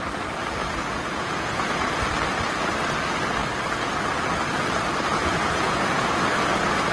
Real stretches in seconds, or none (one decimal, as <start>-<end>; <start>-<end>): 0.0-0.6; 1.9-5.1; 6.1-6.9